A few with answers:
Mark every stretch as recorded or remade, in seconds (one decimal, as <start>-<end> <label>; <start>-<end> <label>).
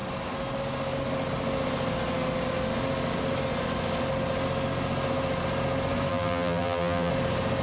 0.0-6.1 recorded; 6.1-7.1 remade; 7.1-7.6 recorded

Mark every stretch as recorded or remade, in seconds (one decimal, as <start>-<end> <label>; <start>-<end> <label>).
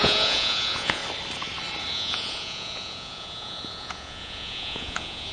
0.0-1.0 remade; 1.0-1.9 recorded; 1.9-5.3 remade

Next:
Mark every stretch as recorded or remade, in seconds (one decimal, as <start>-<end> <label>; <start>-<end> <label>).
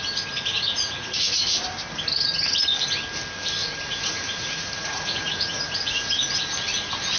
0.0-0.5 recorded; 0.5-1.4 remade; 1.4-3.6 recorded; 3.6-6.4 remade; 6.4-7.2 recorded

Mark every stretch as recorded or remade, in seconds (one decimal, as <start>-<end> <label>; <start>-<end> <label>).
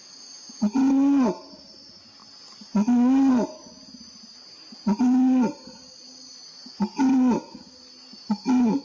0.0-8.8 recorded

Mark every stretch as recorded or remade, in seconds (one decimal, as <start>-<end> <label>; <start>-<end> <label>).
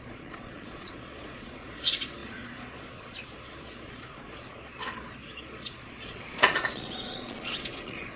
0.0-8.2 remade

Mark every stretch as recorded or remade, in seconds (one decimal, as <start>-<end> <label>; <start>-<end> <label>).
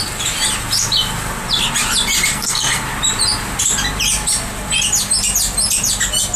0.0-2.3 recorded; 2.3-2.8 remade; 2.8-6.4 recorded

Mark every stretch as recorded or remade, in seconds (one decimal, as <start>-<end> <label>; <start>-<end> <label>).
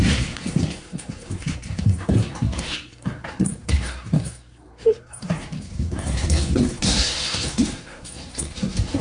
0.0-9.0 remade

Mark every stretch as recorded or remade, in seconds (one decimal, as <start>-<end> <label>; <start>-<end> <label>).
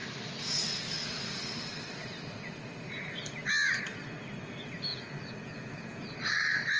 0.0-4.9 recorded; 4.9-6.1 remade; 6.1-6.8 recorded